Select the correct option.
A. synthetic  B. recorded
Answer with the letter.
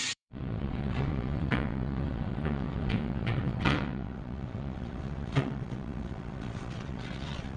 A